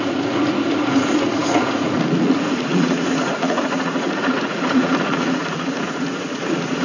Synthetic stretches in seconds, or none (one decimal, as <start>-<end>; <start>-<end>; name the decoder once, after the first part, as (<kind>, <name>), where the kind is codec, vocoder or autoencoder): 0.0-6.8 (vocoder, Vocos)